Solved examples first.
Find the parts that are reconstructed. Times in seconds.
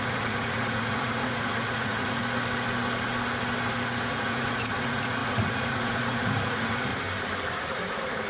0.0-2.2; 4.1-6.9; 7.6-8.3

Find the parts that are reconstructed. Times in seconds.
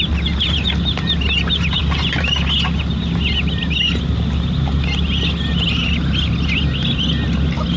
none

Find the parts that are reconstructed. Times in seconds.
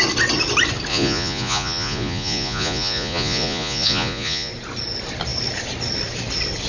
0.9-4.5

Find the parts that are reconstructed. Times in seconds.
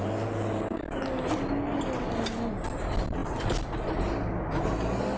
none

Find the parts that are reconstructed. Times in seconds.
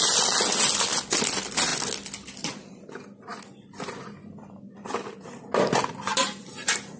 none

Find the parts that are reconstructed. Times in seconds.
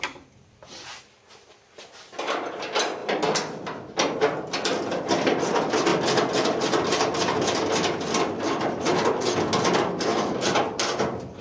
none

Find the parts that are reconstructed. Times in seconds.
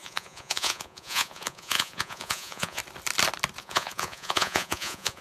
0.0-2.8; 3.6-5.2